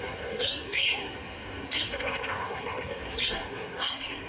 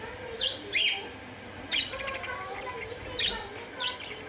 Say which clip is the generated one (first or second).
first